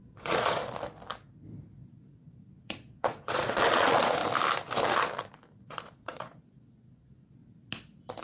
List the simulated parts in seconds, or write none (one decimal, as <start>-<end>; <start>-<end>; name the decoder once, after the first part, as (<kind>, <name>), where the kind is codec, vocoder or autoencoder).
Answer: 0.0-0.6 (vocoder, Vocos); 2.6-4.2; 5.6-7.4